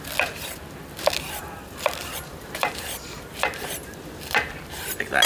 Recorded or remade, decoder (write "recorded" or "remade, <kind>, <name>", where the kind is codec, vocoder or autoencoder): recorded